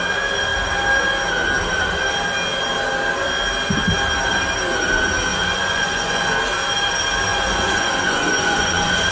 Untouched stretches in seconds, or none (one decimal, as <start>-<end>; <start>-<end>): 0.0-5.3; 6.4-7.3

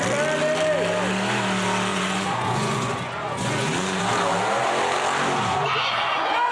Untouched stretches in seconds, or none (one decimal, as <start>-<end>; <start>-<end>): 0.0-1.9; 4.0-5.5

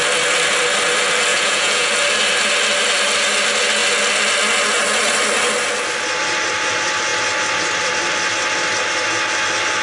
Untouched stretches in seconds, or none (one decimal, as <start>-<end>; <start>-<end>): 0.0-1.3; 1.9-9.8

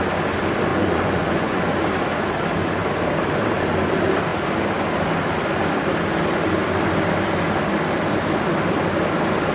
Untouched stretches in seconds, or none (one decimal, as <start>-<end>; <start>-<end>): 0.0-0.7; 1.6-9.5

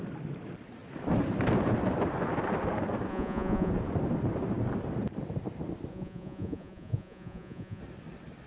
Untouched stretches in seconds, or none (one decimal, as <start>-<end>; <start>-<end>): 0.0-3.1; 3.7-5.9; 7.8-8.5

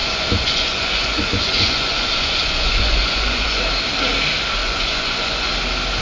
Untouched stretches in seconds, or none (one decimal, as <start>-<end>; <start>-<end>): 3.6-4.6; 5.5-6.0

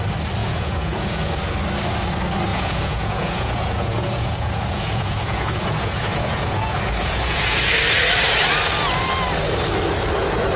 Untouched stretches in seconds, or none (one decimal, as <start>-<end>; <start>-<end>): 0.0-0.4; 1.4-2.5; 7.7-10.6

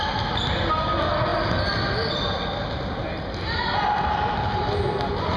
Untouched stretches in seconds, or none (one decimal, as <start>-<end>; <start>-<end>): 0.0-5.4